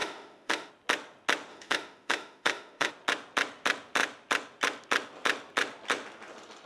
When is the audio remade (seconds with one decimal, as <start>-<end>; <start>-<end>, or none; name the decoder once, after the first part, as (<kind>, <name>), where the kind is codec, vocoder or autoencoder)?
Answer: 0.0-0.7 (autoencoder, DAC-VAE); 1.5-2.9